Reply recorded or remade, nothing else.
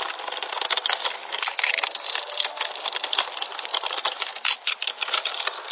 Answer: recorded